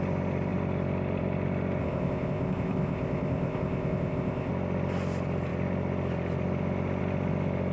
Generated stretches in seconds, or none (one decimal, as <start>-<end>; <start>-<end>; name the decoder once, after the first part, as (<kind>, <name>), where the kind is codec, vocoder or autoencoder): 1.8-4.5 (codec, ZipCodec)